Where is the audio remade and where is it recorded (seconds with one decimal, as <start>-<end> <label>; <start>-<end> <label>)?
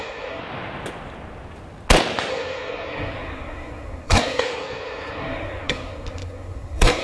0.0-0.4 remade; 0.4-2.3 recorded; 2.3-7.0 remade